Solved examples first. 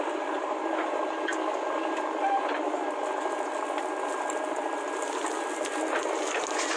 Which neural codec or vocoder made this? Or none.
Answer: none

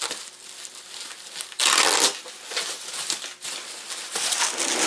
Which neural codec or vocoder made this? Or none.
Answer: none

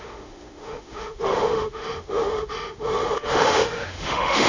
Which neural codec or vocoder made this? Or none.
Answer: autoencoder, DAC-VAE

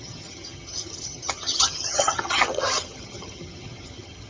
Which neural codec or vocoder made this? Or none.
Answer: vocoder, HiFi-GAN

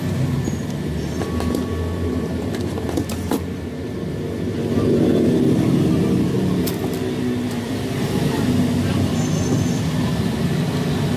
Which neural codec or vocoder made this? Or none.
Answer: none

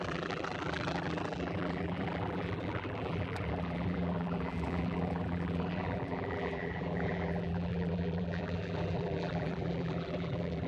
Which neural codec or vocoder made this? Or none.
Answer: vocoder, BigVGAN v2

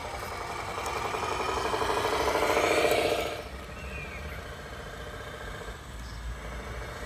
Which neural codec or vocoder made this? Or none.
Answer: none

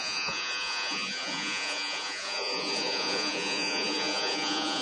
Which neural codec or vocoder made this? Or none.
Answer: vocoder, Vocos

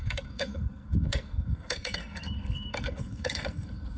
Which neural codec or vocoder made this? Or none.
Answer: codec, SNAC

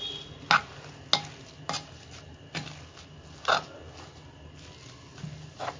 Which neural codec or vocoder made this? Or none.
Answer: none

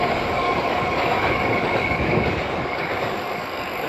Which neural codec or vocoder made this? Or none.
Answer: codec, DAC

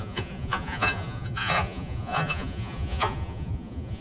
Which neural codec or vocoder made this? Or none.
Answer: vocoder, Vocos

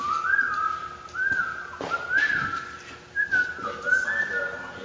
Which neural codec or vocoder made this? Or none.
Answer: none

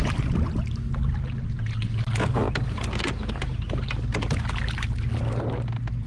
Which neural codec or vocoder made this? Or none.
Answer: none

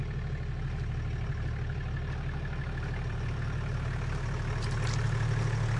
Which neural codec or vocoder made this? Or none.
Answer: none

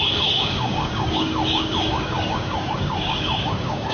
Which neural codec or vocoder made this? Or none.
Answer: codec, DAC